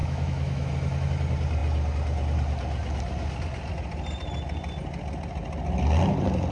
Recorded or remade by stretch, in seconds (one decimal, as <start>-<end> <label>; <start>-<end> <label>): 0.0-0.7 remade; 0.7-6.5 recorded